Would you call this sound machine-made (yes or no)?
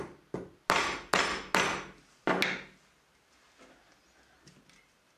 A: no